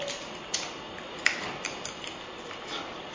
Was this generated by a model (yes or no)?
no